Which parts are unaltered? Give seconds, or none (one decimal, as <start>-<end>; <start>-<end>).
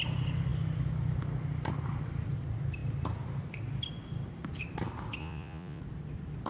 0.0-5.2; 5.8-6.5